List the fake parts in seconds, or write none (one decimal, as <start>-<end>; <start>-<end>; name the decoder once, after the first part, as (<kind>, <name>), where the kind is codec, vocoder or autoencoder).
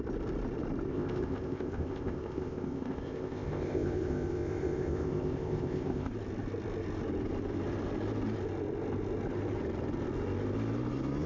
0.9-6.1 (codec, ZipCodec)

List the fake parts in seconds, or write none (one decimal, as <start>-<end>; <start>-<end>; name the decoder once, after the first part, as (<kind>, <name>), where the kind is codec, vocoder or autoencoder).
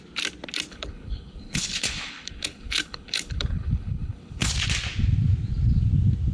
0.7-4.5 (codec, HILCodec)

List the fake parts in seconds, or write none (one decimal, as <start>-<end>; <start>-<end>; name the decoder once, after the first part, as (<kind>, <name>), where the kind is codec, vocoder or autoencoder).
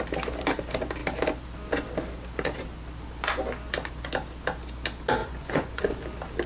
5.2-5.8 (vocoder, Vocos)